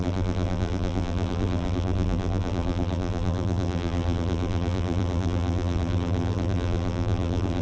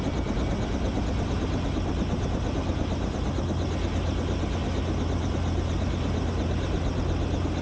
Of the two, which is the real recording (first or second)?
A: second